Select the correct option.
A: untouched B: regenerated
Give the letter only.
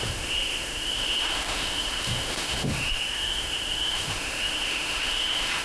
B